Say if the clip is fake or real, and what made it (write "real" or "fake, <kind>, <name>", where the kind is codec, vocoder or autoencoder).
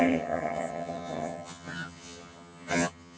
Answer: fake, vocoder, HiFi-GAN